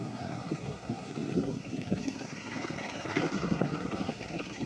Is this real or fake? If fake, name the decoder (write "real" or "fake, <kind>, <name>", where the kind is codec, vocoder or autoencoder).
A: fake, codec, SNAC